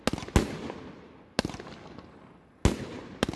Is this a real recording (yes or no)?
yes